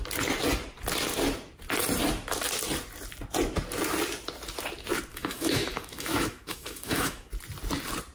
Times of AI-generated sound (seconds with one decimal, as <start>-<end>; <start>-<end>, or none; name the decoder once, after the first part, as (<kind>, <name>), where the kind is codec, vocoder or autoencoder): 5.1-7.3 (autoencoder, DAC-VAE)